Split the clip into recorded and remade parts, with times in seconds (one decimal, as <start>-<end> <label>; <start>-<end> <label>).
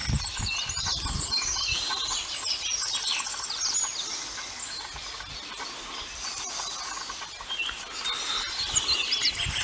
0.0-9.6 recorded